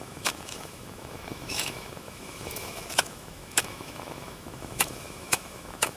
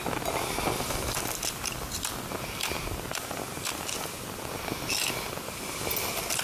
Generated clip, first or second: first